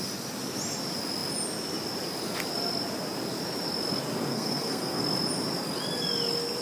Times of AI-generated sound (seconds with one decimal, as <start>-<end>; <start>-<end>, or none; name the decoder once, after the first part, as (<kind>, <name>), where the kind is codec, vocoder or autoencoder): 4.3-5.0 (codec, SNAC)